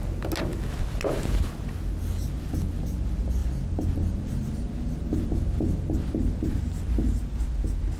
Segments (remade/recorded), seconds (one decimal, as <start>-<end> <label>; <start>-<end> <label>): 0.0-8.0 recorded